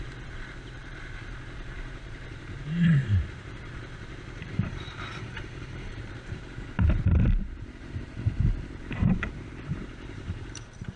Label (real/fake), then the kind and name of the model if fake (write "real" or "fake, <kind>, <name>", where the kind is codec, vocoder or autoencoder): fake, vocoder, BigVGAN v2